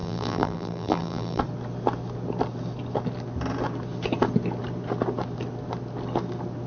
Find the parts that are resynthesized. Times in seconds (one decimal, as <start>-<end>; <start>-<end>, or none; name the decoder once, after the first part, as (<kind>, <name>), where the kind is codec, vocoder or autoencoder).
0.0-1.4 (vocoder, BigVGAN v2)